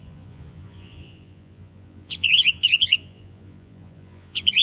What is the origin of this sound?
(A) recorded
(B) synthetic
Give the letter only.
B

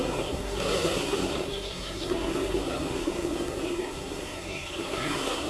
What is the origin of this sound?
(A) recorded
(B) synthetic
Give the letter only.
B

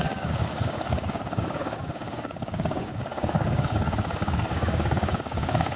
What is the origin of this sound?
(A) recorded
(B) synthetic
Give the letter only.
B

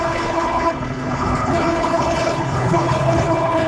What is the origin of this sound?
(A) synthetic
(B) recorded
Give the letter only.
A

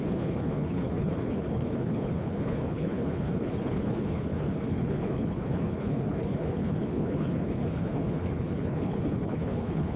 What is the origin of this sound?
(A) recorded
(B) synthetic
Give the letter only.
B